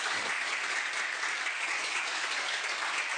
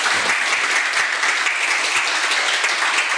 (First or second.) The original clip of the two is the second